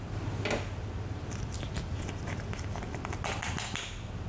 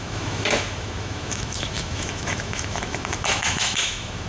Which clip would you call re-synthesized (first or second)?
second